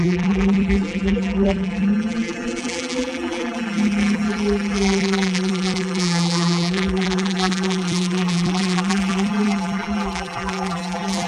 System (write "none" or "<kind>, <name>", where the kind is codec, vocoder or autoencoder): vocoder, BigVGAN v2